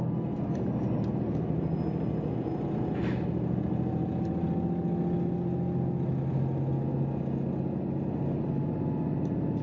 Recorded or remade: recorded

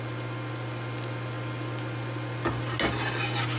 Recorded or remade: recorded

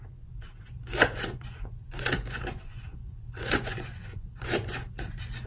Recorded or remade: remade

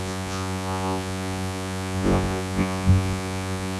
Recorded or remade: remade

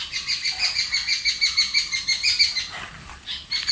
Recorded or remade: recorded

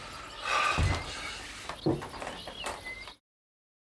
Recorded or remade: recorded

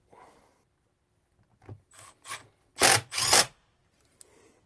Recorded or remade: recorded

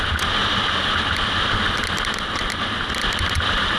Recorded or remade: recorded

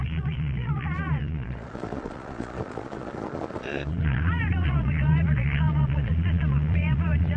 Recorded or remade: remade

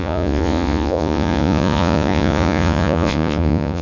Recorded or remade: remade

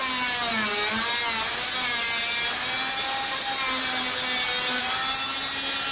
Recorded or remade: recorded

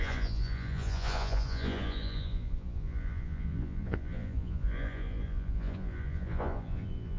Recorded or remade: remade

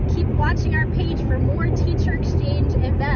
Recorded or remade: recorded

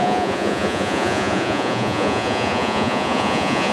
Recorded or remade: remade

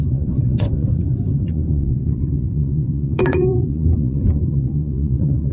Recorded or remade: remade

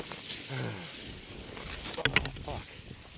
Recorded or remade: recorded